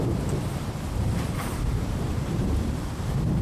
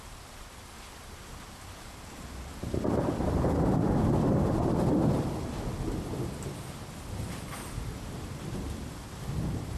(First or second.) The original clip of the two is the second